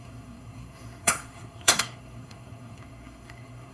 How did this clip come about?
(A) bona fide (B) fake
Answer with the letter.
B